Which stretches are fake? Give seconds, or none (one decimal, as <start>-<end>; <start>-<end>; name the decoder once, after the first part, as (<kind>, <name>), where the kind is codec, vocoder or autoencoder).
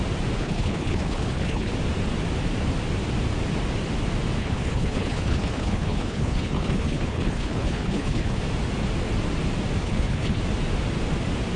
0.4-1.7 (codec, HILCodec); 4.4-8.4; 9.8-10.4